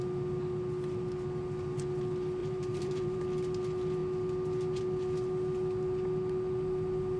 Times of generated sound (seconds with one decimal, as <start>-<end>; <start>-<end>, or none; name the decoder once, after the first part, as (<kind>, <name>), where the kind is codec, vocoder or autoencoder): 2.4-3.2 (vocoder, BigVGAN v2)